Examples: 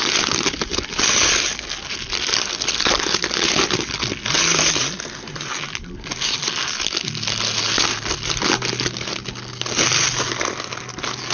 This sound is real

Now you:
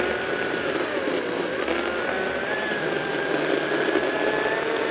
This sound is real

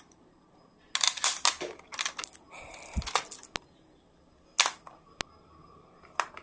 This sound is real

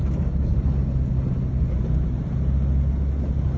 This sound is real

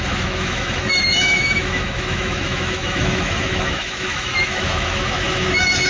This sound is fake